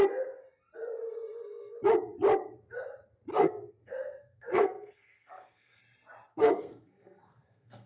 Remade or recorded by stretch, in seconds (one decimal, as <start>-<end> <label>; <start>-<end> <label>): 0.0-3.3 recorded; 3.3-5.8 remade; 5.8-6.3 recorded; 6.3-7.9 remade